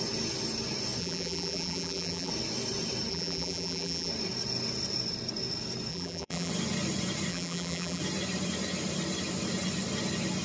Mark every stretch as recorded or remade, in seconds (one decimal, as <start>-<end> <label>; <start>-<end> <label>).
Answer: 0.0-1.0 recorded; 1.0-2.3 remade; 2.3-3.1 recorded; 3.1-4.1 remade; 4.1-5.9 recorded; 5.9-6.5 remade; 6.5-7.3 recorded; 7.3-8.0 remade; 8.0-10.4 recorded